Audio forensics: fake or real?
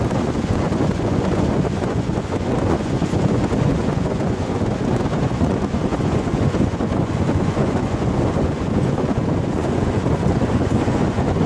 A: fake